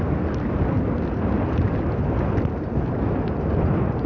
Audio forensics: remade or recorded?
recorded